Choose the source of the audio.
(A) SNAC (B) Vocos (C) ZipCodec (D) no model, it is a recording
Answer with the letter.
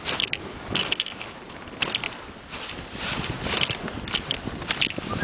D